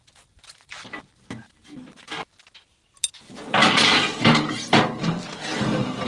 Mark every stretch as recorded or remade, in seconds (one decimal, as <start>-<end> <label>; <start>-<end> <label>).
0.0-3.6 recorded; 3.6-5.1 remade; 5.1-6.1 recorded